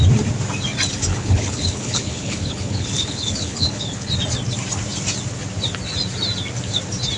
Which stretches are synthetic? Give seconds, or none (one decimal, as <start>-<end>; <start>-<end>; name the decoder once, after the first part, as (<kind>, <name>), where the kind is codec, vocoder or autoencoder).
1.1-4.1 (codec, HILCodec)